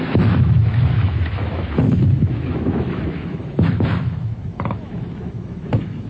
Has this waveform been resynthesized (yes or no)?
yes